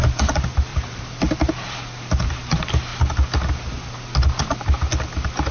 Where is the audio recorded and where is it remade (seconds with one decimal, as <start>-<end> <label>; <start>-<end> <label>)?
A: 0.0-0.7 recorded; 0.7-2.3 remade; 2.3-5.5 recorded